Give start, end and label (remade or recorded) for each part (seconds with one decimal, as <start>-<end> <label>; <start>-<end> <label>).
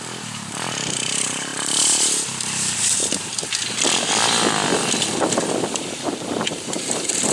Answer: 0.0-1.5 remade; 1.5-2.0 recorded; 2.0-3.0 remade; 3.0-5.6 recorded; 5.6-7.3 remade